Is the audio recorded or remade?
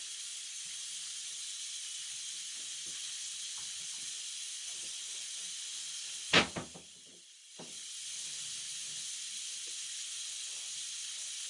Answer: recorded